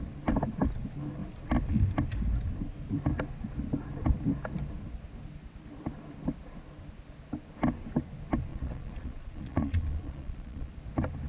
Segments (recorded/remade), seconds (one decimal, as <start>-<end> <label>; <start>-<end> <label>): 0.0-8.5 recorded; 8.5-10.7 remade; 10.7-11.3 recorded

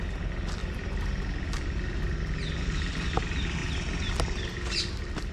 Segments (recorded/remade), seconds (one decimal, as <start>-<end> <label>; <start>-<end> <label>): 0.0-5.3 recorded

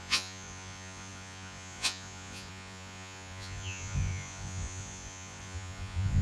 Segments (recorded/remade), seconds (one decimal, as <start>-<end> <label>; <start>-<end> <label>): 0.0-6.2 remade

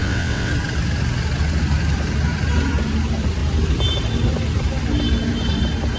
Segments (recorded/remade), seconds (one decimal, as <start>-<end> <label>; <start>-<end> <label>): 0.0-0.5 remade; 0.5-6.0 recorded

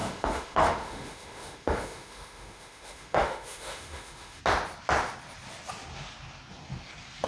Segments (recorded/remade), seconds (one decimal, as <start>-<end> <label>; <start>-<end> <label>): 0.0-4.4 remade; 4.4-7.3 recorded

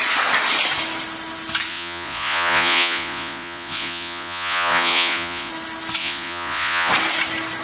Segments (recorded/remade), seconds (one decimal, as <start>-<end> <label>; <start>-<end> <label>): 0.0-1.7 recorded; 1.7-5.5 remade; 5.5-6.0 recorded; 6.0-6.9 remade; 6.9-7.6 recorded

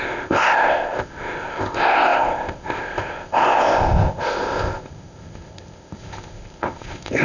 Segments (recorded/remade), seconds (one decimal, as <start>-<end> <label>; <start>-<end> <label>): 0.0-7.2 remade